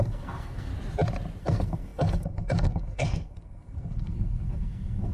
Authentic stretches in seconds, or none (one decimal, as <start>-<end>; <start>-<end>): 0.7-1.4